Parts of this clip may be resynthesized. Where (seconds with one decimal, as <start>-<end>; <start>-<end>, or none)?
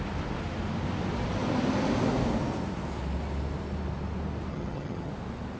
4.5-5.1